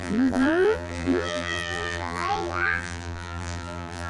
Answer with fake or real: fake